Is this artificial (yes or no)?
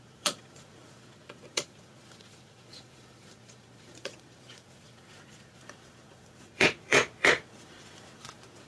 yes